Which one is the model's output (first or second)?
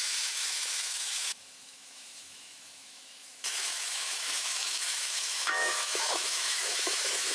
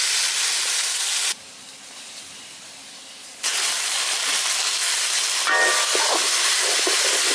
first